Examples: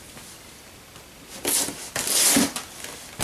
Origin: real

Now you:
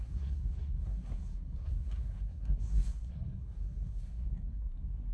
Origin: fake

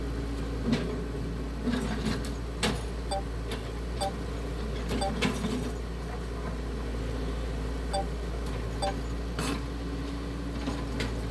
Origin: real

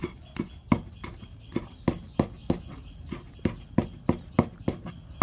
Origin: real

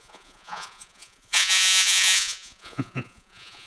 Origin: fake